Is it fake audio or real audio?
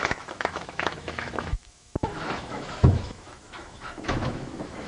fake